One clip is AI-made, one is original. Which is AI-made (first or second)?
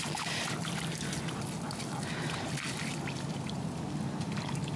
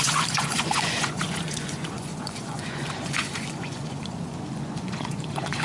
second